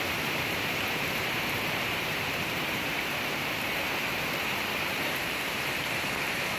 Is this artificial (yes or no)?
yes